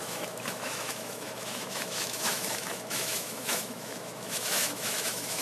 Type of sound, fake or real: fake